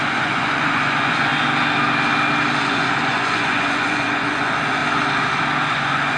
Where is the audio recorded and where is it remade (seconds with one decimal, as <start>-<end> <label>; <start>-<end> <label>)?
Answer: 0.0-1.3 remade; 1.3-2.6 recorded; 2.6-4.8 remade; 4.8-5.7 recorded; 5.7-6.2 remade